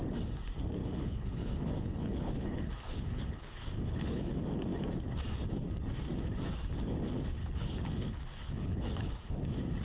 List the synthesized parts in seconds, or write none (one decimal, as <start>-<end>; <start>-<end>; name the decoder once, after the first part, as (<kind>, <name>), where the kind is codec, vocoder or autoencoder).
0.8-4.3 (codec, HILCodec); 7.4-9.4